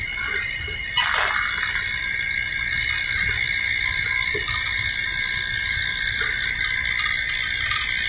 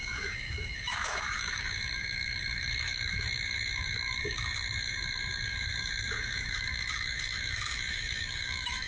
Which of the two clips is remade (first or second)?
second